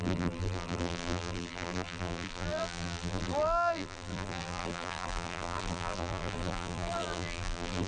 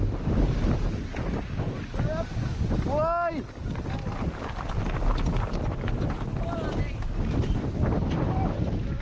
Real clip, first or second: second